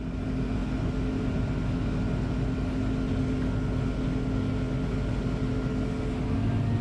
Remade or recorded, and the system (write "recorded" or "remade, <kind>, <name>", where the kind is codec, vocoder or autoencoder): recorded